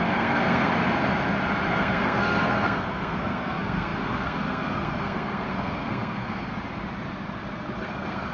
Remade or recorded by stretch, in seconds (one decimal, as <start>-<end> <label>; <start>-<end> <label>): 0.0-0.7 remade; 0.7-1.7 recorded; 1.7-6.5 remade; 6.5-7.8 recorded; 7.8-8.3 remade